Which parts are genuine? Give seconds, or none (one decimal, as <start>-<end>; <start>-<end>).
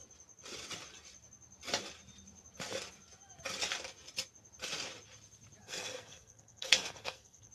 0.0-5.6